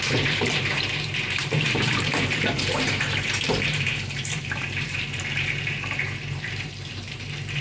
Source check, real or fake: fake